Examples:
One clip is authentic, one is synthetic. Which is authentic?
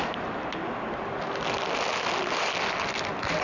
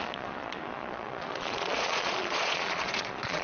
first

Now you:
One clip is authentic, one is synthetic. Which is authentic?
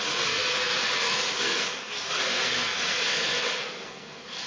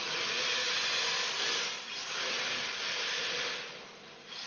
second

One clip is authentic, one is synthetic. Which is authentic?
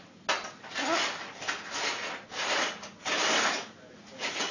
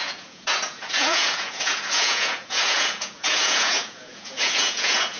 first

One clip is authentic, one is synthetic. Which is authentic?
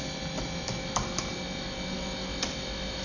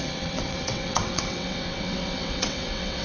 first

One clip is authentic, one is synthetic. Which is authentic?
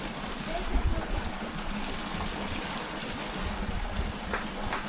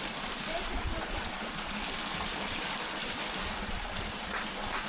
first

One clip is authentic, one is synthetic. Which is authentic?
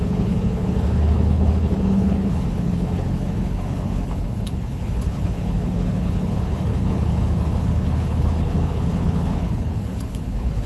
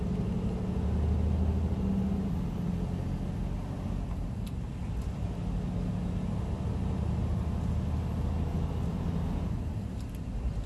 second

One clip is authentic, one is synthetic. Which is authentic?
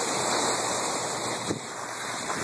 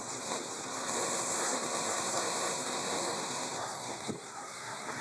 first